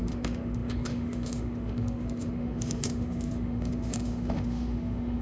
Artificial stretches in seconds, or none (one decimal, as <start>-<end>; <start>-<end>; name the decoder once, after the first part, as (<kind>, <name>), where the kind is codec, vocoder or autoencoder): 0.0-5.2 (autoencoder, DAC-VAE)

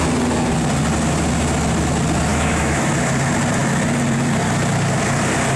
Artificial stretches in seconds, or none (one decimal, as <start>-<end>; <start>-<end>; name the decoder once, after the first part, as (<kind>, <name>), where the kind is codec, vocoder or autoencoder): 2.3-2.9 (autoencoder, DAC-VAE)

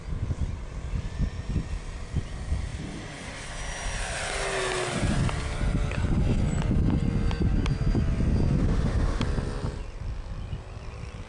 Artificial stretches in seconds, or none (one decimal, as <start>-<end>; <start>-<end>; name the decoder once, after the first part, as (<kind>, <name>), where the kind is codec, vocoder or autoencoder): 8.6-9.2 (autoencoder, DAC-VAE)

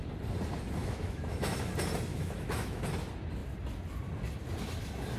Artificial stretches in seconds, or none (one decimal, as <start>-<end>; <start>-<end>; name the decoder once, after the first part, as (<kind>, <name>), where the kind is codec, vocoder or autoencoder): 0.8-1.7 (autoencoder, DAC-VAE); 2.1-2.8

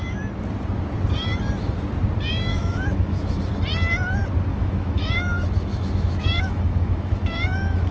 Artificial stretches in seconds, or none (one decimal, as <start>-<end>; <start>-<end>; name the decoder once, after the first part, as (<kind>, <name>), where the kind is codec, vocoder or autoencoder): 2.5-3.4 (autoencoder, DAC-VAE); 4.5-7.9

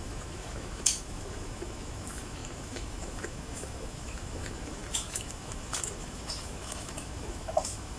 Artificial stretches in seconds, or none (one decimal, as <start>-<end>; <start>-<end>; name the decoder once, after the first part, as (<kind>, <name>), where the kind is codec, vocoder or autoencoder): 0.0-8.0 (autoencoder, DAC-VAE)

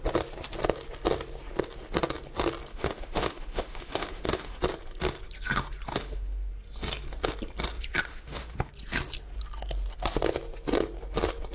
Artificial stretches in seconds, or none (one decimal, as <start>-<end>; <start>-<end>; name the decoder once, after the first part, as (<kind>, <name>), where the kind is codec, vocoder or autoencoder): 2.7-4.6 (autoencoder, DAC-VAE); 5.9-6.5; 8.1-8.7

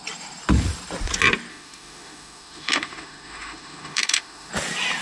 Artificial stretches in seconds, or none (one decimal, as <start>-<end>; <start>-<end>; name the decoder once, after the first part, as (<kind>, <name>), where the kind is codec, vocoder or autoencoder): 1.5-4.5 (autoencoder, DAC-VAE)